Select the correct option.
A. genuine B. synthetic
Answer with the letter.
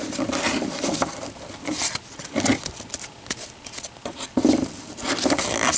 A